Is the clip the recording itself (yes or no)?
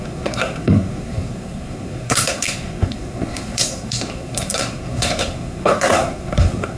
no